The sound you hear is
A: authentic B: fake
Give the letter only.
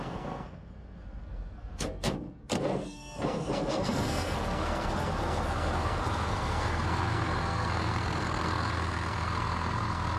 B